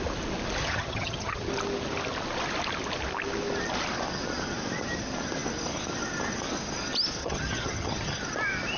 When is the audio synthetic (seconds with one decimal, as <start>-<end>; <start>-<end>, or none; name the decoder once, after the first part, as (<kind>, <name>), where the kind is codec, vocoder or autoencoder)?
0.6-1.5 (vocoder, HiFi-GAN); 7.2-8.2